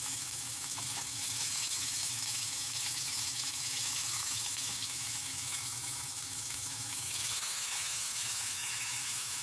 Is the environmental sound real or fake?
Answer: fake